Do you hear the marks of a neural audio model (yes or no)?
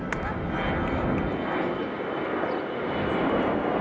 no